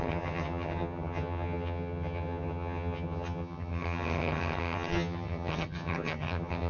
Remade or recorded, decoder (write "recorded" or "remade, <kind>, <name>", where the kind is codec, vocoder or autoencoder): remade, vocoder, HiFi-GAN